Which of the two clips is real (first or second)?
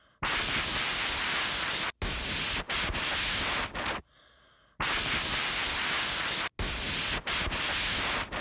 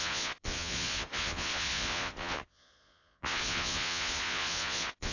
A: first